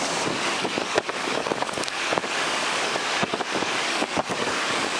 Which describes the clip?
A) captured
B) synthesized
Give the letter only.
B